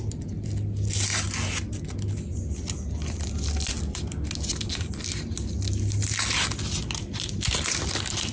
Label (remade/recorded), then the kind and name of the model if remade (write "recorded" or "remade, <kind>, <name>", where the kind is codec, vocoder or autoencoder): recorded